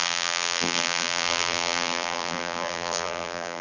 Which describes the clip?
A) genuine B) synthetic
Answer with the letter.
B